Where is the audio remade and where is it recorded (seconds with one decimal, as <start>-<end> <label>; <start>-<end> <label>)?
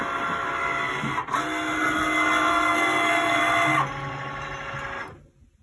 0.0-2.5 recorded; 2.5-3.5 remade; 3.5-5.6 recorded